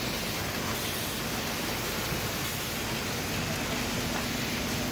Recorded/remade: recorded